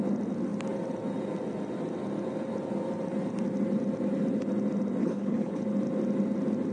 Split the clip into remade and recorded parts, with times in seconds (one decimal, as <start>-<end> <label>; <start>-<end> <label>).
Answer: 0.0-5.0 recorded; 5.0-5.6 remade; 5.6-6.7 recorded